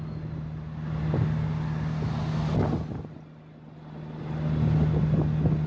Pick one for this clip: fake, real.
real